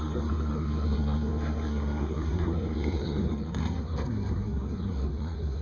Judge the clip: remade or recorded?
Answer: remade